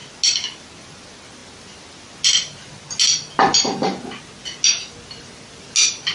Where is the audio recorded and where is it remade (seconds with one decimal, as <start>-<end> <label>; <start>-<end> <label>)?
0.0-6.1 recorded